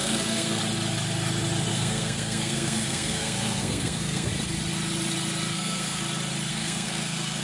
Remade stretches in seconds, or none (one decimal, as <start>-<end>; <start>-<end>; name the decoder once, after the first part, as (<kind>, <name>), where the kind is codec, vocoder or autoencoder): 0.0-0.6 (codec, SNAC); 1.7-4.3; 5.5-6.0; 6.5-7.4